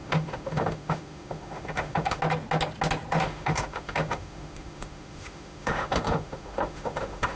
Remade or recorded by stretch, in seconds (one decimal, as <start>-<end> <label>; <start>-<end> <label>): 0.0-2.2 remade; 2.2-3.1 recorded; 3.1-7.4 remade